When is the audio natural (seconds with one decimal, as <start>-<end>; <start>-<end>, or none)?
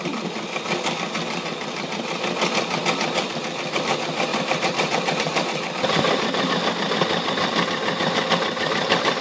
0.0-4.3; 6.5-9.2